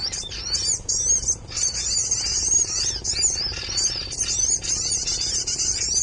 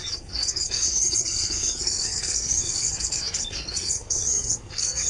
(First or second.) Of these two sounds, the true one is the first